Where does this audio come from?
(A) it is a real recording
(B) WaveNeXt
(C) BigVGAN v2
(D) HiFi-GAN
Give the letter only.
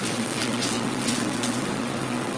B